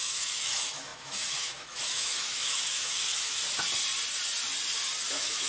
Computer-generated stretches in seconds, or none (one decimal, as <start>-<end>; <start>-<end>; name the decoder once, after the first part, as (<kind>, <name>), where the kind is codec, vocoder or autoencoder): 0.0-3.4 (autoencoder, DAC-VAE); 5.1-5.5